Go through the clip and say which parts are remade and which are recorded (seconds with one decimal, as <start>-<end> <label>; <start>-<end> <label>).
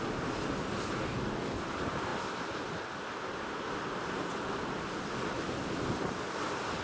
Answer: 0.0-1.0 recorded; 1.0-1.6 remade; 1.6-6.8 recorded